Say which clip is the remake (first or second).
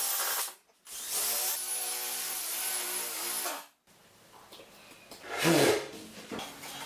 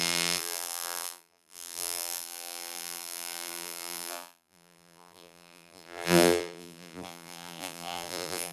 second